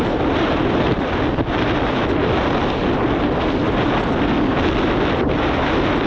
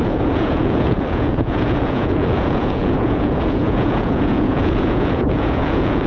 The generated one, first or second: second